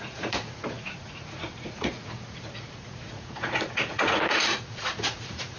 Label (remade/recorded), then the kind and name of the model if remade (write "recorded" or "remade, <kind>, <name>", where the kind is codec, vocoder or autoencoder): remade, vocoder, Vocos